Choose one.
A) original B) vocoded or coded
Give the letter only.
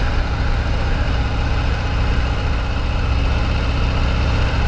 A